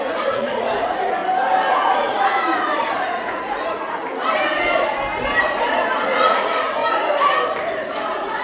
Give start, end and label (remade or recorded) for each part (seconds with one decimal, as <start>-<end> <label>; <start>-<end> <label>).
0.0-1.2 remade; 1.2-1.7 recorded; 1.7-4.0 remade; 4.0-5.4 recorded; 5.4-6.8 remade; 6.8-7.8 recorded; 7.8-8.4 remade